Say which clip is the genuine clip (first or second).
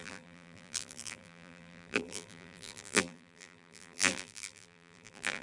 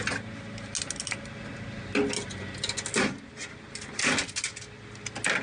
second